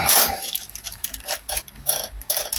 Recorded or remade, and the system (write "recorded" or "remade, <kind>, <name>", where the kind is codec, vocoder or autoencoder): remade, codec, DAC